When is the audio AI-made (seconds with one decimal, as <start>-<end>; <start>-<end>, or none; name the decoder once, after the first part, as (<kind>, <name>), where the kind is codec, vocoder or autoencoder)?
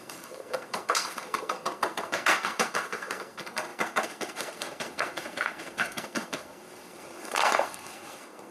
0.0-8.5 (codec, SNAC)